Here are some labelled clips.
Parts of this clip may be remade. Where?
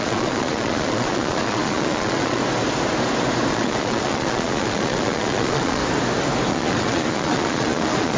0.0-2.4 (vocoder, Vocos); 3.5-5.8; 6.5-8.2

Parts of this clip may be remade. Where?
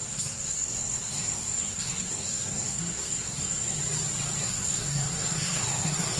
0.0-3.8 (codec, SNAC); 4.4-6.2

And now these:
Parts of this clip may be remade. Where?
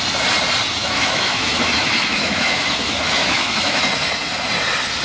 0.8-3.8 (autoencoder, DAC-VAE)